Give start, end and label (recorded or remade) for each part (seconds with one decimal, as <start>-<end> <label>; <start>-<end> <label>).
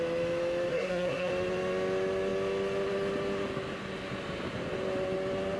0.0-0.7 recorded; 0.7-1.3 remade; 1.3-5.6 recorded